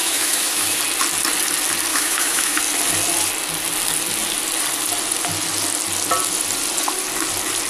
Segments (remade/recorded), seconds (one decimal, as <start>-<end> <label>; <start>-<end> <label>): 0.0-0.8 remade; 0.8-1.9 recorded; 1.9-2.6 remade; 2.6-7.7 recorded